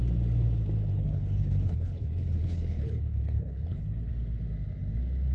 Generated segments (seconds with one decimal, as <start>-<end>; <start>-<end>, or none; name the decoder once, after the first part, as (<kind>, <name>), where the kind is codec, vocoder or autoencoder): 0.9-4.1 (codec, HILCodec)